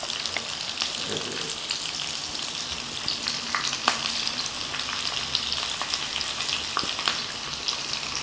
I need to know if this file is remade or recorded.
recorded